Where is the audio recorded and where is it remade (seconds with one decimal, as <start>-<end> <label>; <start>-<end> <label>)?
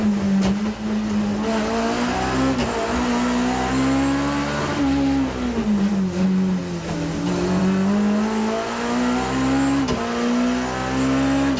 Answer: 0.0-11.6 recorded